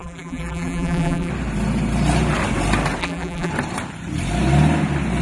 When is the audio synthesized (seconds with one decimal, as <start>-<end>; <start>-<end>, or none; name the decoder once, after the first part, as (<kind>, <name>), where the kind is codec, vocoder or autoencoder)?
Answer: 0.0-1.3 (vocoder, BigVGAN v2); 3.0-3.5